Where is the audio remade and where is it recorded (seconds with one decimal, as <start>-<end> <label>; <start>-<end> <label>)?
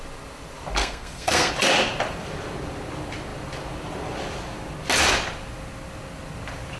0.0-0.8 recorded; 0.8-1.5 remade; 1.5-6.8 recorded